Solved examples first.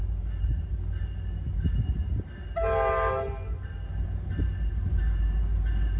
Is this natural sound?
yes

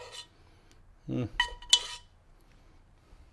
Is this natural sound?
yes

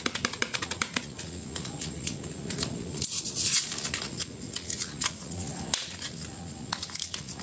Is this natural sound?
no